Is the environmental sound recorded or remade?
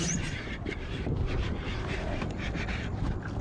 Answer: recorded